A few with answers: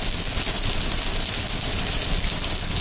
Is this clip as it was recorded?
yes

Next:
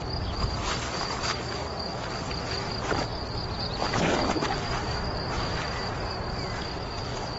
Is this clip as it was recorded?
yes